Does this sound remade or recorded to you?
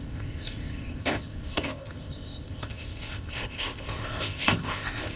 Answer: remade